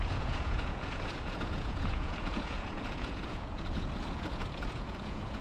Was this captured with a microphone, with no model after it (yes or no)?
no